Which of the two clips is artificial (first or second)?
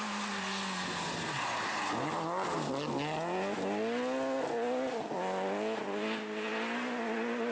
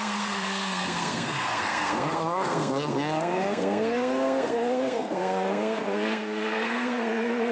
second